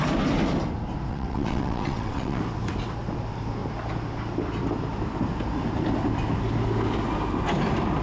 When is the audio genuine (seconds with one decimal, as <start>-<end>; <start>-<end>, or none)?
0.0-1.1; 2.4-8.0